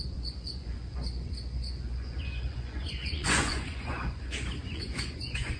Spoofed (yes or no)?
yes